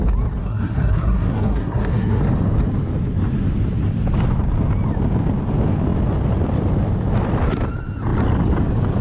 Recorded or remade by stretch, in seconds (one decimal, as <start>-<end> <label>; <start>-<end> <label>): 0.0-0.4 recorded; 0.4-2.2 remade; 2.2-9.0 recorded